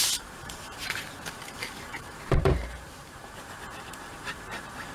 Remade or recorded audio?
remade